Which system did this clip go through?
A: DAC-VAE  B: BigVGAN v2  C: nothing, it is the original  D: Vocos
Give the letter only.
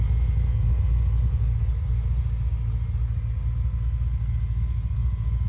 C